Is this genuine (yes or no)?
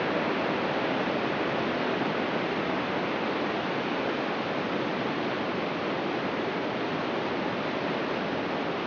yes